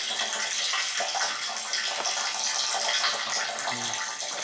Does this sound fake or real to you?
real